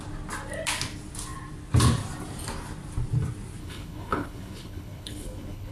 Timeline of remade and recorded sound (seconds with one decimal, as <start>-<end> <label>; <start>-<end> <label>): 0.0-3.6 recorded; 3.6-5.7 remade